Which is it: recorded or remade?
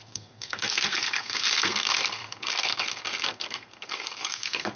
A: remade